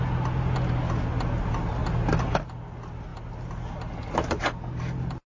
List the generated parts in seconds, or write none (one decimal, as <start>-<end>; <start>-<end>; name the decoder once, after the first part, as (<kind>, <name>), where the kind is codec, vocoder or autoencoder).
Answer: none